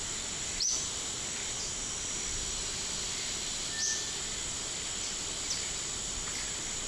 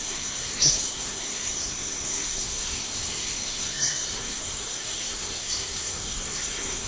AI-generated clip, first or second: second